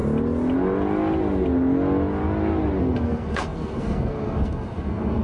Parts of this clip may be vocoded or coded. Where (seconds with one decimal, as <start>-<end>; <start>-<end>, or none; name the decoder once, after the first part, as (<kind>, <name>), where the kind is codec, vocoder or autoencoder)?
2.8-5.2 (codec, SNAC)